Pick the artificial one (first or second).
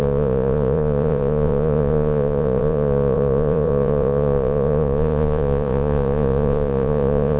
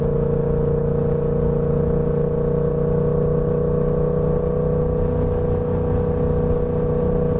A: first